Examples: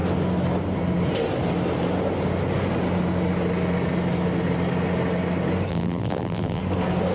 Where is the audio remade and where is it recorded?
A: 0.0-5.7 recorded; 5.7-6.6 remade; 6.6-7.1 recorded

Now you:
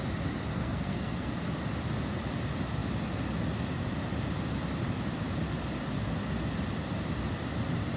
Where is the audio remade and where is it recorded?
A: 0.0-0.5 recorded; 0.5-1.3 remade; 1.3-8.0 recorded

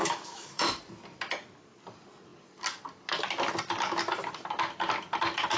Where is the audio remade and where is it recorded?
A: 0.0-0.8 remade; 0.8-5.6 recorded

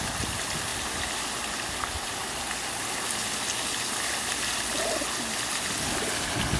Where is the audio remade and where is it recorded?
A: 0.0-0.7 recorded; 0.7-2.4 remade; 2.4-6.6 recorded

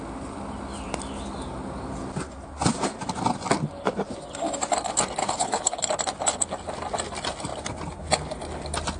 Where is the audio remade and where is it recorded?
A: 0.0-5.2 recorded; 5.2-5.8 remade; 5.8-9.0 recorded

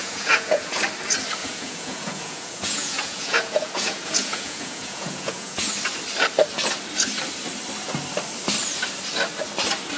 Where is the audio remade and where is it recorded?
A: 0.0-0.8 remade; 0.8-1.4 recorded; 1.4-5.7 remade; 5.7-10.0 recorded

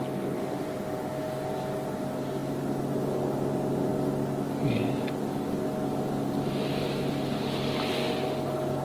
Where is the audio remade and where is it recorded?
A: 0.0-8.8 recorded